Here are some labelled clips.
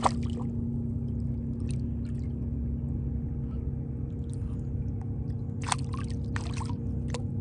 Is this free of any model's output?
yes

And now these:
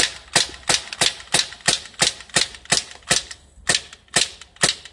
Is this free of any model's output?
yes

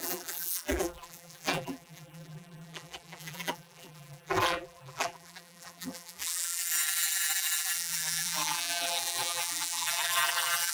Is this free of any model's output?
no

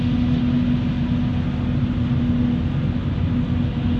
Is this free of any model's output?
yes